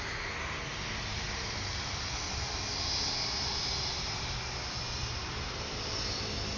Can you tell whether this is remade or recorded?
recorded